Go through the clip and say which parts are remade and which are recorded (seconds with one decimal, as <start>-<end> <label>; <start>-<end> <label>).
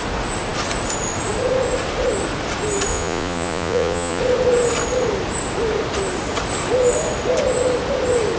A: 0.0-2.9 recorded; 2.9-4.2 remade; 4.2-8.4 recorded